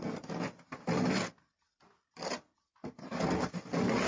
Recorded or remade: recorded